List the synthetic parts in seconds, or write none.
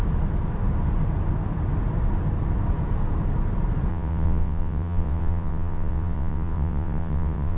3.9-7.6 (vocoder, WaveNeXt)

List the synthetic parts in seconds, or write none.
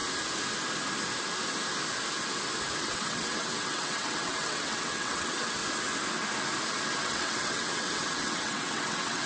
2.8-5.6 (vocoder, WaveNeXt); 7.0-9.3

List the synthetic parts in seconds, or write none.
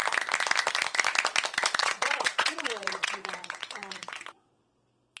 1.8-4.6 (vocoder, WaveNeXt)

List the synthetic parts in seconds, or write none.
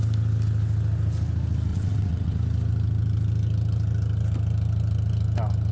1.7-2.4 (vocoder, WaveNeXt)